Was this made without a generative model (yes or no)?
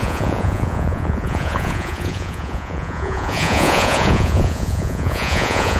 no